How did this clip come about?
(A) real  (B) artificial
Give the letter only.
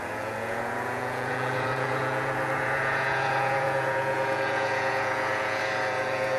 B